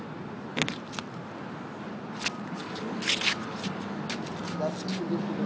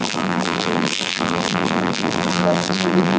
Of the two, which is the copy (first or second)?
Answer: second